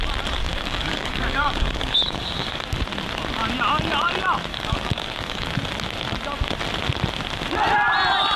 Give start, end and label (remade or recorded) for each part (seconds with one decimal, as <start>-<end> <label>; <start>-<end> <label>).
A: 0.0-0.4 recorded; 0.4-2.6 remade; 2.6-4.5 recorded; 4.5-5.6 remade; 5.6-8.4 recorded